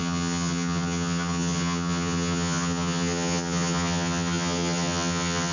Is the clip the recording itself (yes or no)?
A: no